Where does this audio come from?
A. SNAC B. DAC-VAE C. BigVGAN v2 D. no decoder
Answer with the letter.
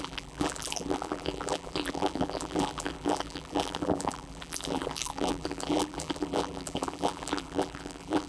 C